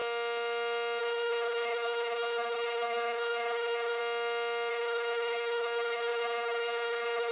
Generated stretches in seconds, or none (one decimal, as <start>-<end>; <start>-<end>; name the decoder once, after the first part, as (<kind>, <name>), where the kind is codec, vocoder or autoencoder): 1.0-4.0 (codec, HILCodec); 4.7-7.3